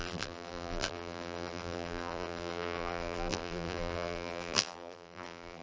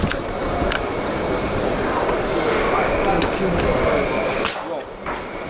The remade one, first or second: first